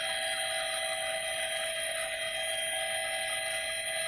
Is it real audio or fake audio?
real